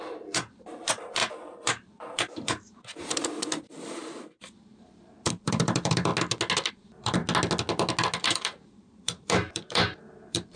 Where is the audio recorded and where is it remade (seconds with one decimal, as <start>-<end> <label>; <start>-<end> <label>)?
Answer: 0.0-6.1 remade; 6.1-6.7 recorded; 6.7-7.2 remade; 7.2-8.2 recorded; 8.2-10.6 remade